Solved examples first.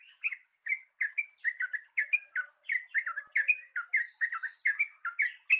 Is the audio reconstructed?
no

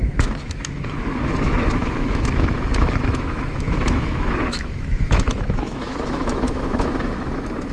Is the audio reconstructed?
yes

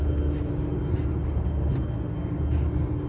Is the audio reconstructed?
no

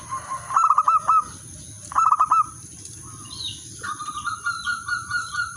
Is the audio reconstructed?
no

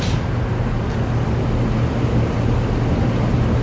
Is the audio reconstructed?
no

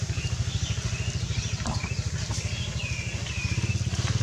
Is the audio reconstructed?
no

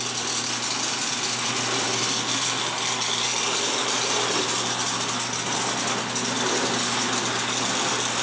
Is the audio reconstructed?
no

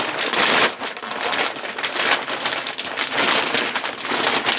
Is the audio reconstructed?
no